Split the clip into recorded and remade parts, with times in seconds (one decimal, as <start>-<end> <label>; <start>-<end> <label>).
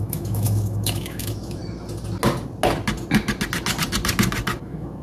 0.0-1.6 remade; 1.6-4.6 recorded; 4.6-5.0 remade